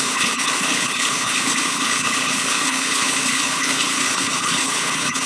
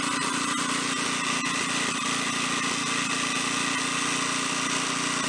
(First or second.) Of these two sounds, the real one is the second